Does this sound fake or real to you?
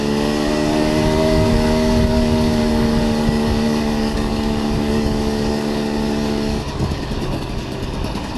fake